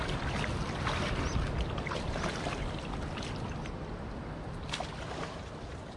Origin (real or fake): real